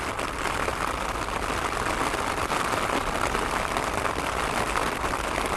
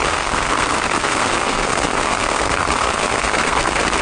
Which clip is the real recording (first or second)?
first